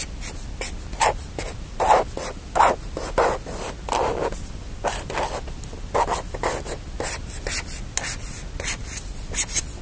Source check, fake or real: real